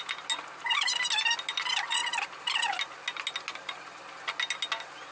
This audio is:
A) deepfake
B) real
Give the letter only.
B